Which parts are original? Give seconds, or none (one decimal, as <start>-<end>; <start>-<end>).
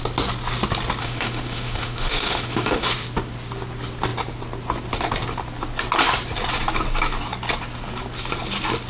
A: 0.0-1.0; 2.9-8.9